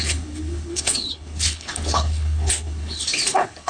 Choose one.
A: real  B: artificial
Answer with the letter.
B